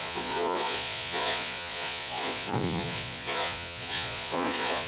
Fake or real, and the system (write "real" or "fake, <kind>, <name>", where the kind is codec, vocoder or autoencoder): fake, vocoder, Vocos